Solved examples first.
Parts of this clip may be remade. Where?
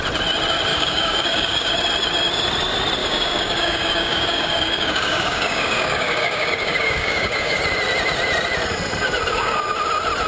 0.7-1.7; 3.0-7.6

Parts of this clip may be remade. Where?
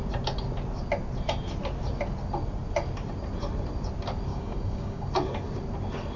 4.3-5.1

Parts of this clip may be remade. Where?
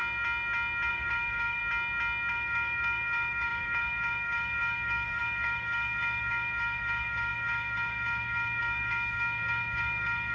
0.9-1.6; 2.3-10.3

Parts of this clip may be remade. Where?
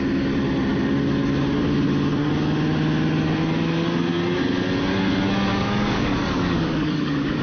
5.5-7.4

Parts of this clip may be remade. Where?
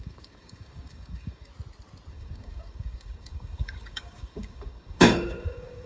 0.0-1.5; 2.1-5.9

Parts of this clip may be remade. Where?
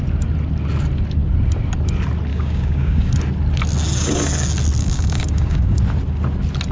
2.3-3.1; 4.8-5.8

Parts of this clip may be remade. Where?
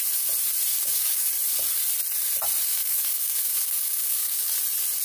0.7-1.3; 2.7-4.5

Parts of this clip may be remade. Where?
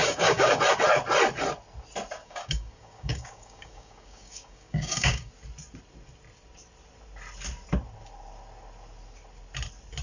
0.0-0.6; 2.2-5.3